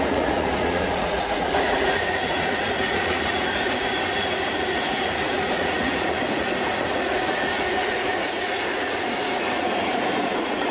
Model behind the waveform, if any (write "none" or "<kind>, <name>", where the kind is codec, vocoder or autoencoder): vocoder, Vocos